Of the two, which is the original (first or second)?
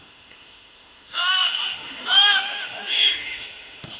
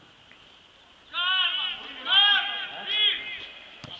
second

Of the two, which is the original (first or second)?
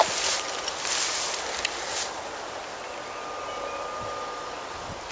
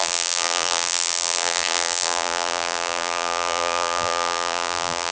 first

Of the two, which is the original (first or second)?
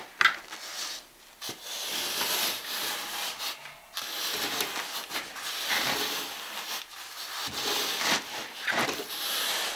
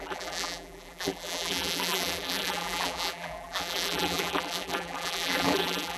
first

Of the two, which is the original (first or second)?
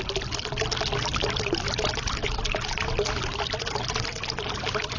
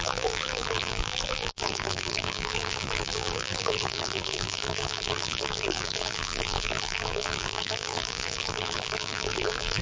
first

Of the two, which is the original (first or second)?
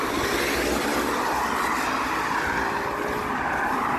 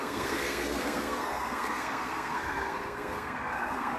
first